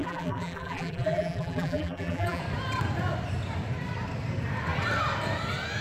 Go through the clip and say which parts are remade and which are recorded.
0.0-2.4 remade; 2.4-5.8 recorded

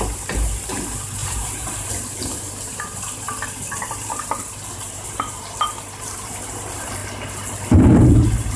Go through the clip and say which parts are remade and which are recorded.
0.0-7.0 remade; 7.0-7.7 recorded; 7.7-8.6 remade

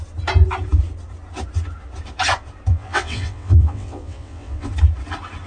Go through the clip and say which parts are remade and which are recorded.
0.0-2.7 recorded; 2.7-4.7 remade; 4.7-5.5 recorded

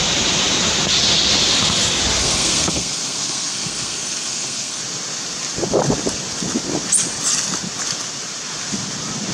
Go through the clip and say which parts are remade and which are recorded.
0.0-2.2 recorded; 2.2-4.8 remade; 4.8-9.3 recorded

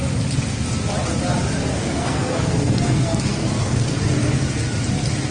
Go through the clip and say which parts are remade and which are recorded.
0.0-1.7 recorded; 1.7-4.0 remade; 4.0-5.3 recorded

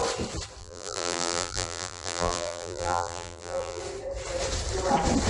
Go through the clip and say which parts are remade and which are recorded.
0.0-0.6 recorded; 0.6-3.8 remade; 3.8-5.3 recorded